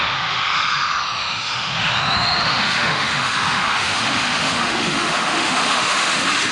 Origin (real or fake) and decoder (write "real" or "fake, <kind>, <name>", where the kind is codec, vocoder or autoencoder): fake, autoencoder, DAC-VAE